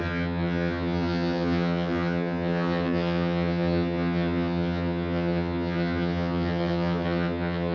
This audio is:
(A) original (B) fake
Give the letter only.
B